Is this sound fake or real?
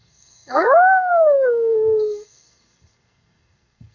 fake